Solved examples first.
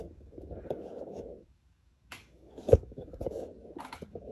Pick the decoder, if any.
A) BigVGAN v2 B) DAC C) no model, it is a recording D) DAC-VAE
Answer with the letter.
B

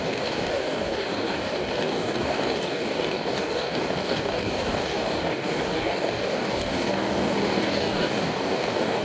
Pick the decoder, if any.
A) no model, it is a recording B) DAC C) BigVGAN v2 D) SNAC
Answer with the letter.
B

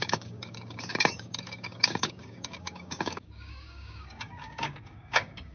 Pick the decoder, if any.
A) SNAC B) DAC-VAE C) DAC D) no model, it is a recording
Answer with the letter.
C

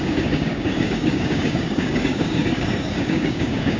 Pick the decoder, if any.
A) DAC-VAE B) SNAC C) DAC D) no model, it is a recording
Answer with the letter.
C